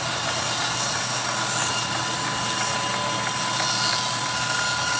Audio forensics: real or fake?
real